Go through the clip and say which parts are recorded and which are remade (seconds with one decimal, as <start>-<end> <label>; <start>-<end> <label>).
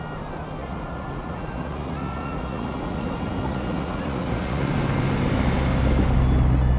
0.0-0.6 recorded; 0.6-4.7 remade; 4.7-6.8 recorded